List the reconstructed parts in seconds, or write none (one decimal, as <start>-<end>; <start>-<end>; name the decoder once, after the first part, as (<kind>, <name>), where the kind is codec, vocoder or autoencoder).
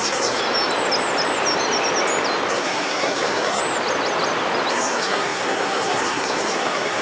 0.0-0.4 (codec, SNAC); 2.5-3.6; 4.7-7.0